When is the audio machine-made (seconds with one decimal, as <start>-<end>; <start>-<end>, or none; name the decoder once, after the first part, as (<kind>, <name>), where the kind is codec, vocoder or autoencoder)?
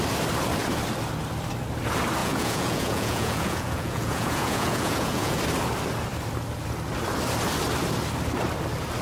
2.2-5.4 (vocoder, Vocos)